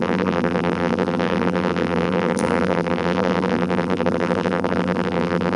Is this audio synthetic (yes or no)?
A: yes